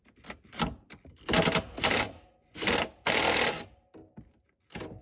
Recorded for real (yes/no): yes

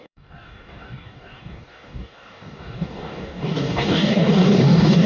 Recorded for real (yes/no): no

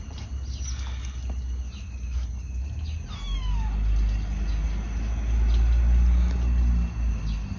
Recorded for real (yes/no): yes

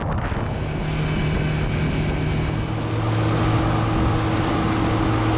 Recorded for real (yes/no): yes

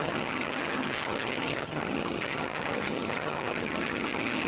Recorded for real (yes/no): no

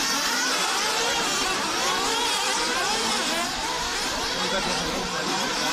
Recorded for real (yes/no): no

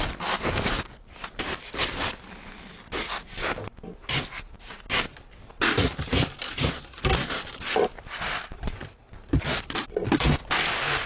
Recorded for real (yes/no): yes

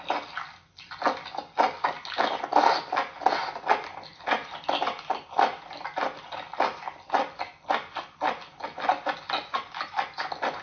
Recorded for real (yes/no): yes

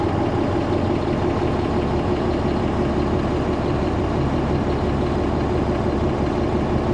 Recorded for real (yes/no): yes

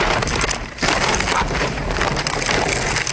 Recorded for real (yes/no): yes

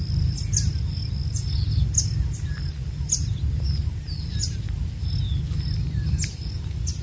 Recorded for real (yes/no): yes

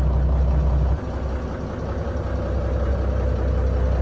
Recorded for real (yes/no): yes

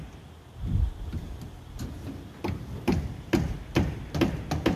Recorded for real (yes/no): yes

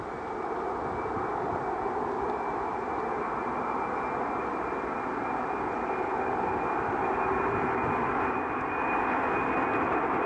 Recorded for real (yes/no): no